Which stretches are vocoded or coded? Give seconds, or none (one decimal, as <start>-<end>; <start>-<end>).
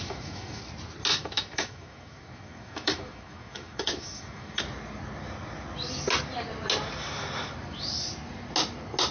0.0-0.6; 1.1-4.6